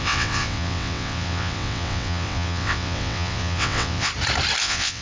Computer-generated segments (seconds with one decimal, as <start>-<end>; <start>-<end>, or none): 0.0-4.1; 4.6-5.0